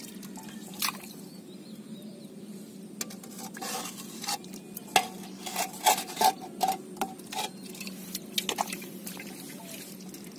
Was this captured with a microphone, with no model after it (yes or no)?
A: yes